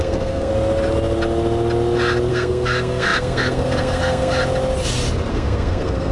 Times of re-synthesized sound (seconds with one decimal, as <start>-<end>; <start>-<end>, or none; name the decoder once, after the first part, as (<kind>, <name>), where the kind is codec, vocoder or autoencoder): 0.0-0.5 (codec, SNAC); 2.3-4.4; 5.3-6.1